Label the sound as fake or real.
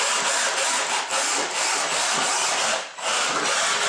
real